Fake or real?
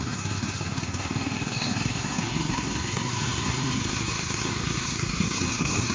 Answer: fake